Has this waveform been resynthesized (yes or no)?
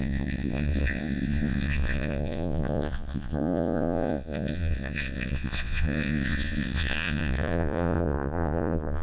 yes